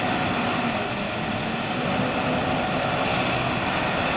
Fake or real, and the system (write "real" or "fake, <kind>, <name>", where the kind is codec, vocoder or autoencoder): real